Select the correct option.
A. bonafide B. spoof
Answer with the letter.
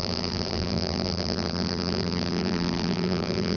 B